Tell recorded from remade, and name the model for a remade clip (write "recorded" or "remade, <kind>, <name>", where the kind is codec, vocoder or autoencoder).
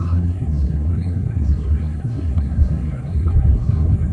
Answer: remade, codec, SNAC